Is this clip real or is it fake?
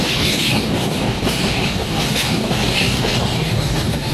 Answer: fake